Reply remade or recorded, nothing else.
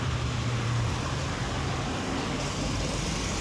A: recorded